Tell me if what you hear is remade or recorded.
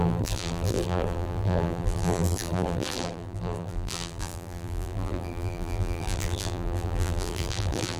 remade